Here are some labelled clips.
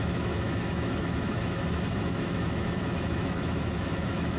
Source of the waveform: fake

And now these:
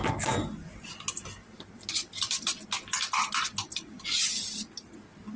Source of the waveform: real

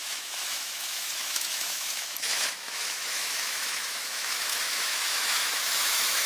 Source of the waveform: fake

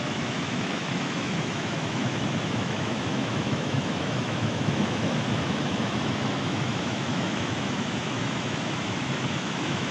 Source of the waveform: fake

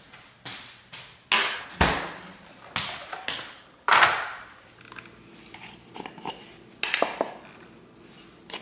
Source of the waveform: real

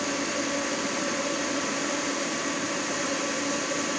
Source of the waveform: real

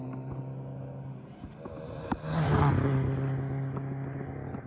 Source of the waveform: real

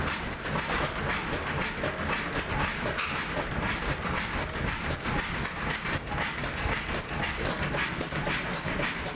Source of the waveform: real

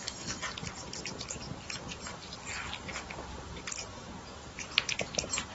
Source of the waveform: real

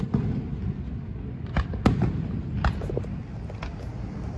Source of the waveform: real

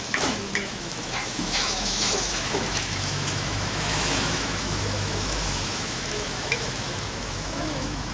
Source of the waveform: fake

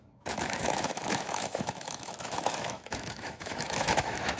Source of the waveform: fake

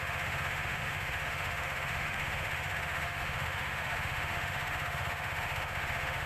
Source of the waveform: fake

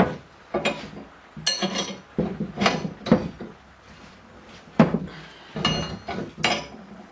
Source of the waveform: real